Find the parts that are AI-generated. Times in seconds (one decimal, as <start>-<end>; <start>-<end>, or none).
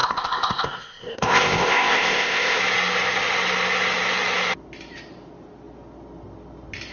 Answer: 0.0-2.6